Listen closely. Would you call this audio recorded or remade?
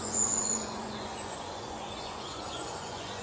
remade